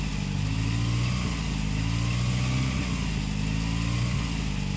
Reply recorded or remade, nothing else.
recorded